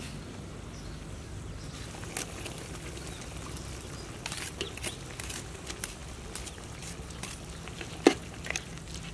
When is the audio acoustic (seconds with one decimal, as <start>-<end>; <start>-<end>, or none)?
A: 0.0-9.1